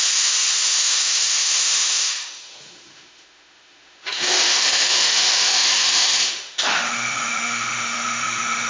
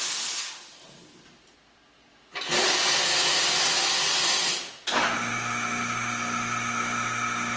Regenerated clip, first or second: first